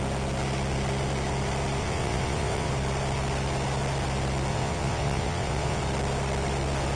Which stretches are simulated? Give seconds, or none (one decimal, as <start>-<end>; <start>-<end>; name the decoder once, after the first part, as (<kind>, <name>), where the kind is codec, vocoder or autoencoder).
1.8-2.7 (vocoder, WaveNeXt); 4.5-5.8